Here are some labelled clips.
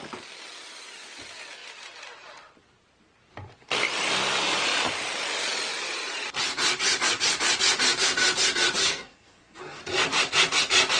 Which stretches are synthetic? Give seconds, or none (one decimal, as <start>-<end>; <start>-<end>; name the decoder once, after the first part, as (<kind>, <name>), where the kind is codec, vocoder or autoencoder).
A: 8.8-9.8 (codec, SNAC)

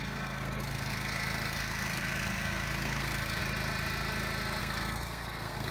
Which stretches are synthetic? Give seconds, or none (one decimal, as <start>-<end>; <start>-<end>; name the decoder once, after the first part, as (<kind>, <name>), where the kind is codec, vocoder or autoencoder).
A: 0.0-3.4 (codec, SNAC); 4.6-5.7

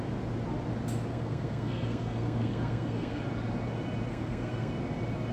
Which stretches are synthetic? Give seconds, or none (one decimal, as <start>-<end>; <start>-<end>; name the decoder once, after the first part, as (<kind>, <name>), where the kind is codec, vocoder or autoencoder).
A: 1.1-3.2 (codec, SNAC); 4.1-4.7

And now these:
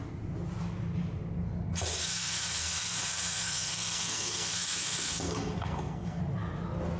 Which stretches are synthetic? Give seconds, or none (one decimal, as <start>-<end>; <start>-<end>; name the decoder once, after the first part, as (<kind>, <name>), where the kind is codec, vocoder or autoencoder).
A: 2.0-6.2 (codec, SNAC)

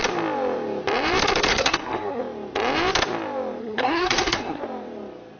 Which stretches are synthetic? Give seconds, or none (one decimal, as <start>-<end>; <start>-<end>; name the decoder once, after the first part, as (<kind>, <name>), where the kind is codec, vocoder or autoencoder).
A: 1.5-2.2 (codec, SNAC); 3.6-4.6

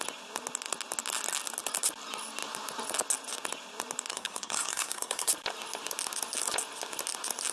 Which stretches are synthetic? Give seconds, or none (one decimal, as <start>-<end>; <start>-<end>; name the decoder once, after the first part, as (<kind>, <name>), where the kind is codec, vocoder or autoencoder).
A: 4.1-5.3 (codec, SNAC)